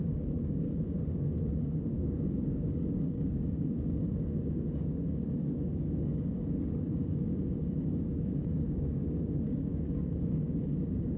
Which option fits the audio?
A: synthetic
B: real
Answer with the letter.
A